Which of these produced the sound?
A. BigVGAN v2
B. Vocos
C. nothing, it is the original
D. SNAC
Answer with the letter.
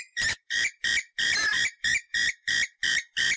A